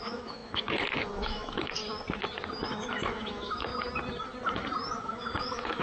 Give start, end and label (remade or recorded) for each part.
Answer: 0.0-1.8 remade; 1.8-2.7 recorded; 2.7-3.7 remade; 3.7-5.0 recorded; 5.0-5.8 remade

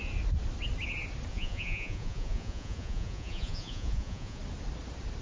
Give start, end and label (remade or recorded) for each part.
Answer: 0.0-1.3 recorded; 1.3-4.4 remade; 4.4-5.2 recorded

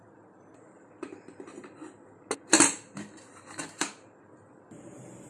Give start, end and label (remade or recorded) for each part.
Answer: 0.0-1.8 remade; 1.8-3.2 recorded; 3.2-5.3 remade

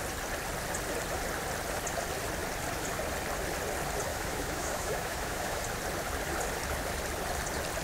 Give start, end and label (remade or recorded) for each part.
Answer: 0.0-4.1 recorded; 4.1-5.6 remade; 5.6-7.8 recorded